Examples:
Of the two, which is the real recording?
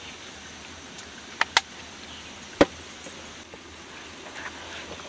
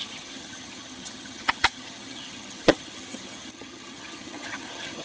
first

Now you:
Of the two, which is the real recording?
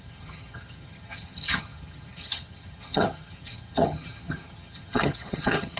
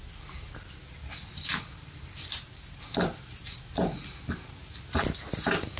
second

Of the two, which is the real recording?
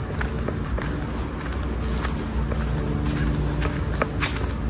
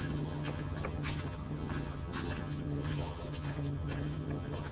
first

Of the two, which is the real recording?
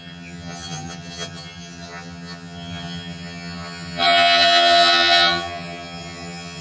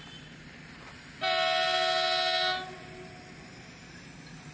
second